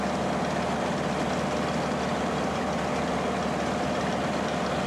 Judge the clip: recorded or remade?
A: recorded